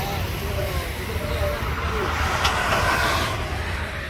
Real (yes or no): no